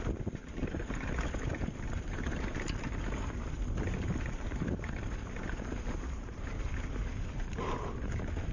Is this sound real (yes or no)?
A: no